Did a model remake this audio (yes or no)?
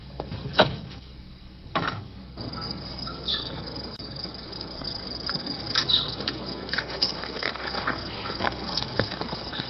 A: yes